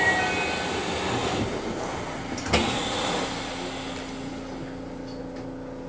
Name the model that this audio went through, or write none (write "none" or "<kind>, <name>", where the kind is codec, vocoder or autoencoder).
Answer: none